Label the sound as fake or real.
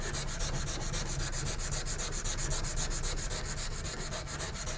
real